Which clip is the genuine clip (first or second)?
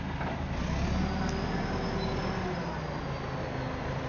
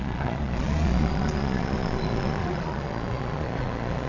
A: first